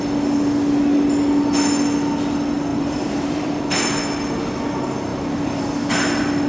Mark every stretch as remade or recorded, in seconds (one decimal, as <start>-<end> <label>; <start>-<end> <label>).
0.0-2.7 recorded; 2.7-3.6 remade; 3.6-5.1 recorded; 5.1-5.6 remade; 5.6-6.5 recorded